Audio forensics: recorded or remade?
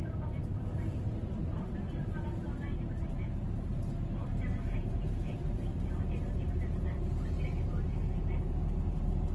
remade